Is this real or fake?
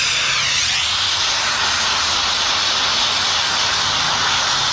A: real